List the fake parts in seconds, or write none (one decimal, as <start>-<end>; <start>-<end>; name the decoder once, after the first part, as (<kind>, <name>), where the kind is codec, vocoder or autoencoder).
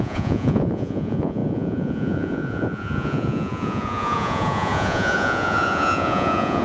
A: 0.0-6.6 (vocoder, Vocos)